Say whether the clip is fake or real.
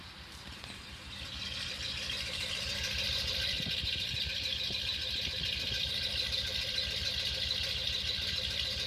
fake